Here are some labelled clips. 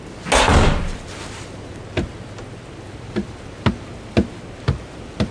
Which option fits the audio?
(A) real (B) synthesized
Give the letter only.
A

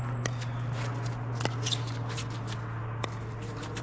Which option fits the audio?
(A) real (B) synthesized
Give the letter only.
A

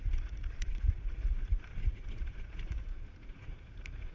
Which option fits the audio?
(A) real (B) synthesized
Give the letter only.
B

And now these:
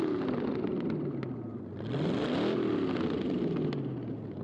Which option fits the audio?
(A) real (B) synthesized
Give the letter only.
A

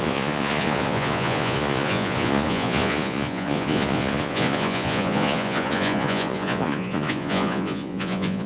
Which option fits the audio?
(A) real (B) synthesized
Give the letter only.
B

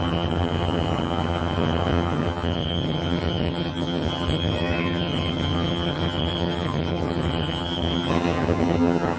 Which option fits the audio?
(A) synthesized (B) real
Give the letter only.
A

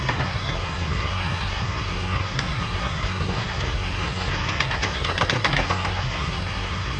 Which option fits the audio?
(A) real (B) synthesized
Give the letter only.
B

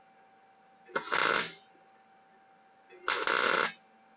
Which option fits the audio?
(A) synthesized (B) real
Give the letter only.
B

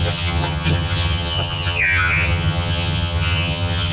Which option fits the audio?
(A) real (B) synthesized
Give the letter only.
B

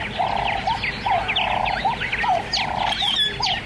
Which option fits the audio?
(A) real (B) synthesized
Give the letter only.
A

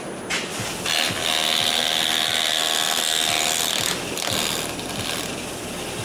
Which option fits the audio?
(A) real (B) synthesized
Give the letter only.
A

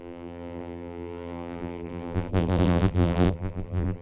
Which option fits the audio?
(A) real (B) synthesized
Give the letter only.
B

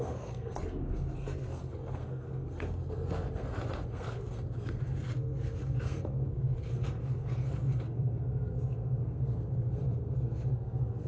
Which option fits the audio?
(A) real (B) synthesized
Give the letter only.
B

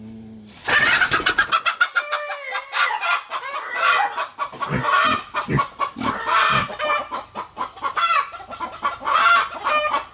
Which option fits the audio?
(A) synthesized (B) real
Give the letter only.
B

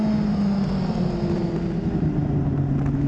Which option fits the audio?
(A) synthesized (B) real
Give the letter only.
B